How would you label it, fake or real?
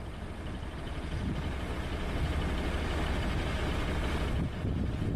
real